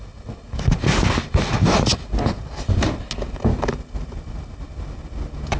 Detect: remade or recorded recorded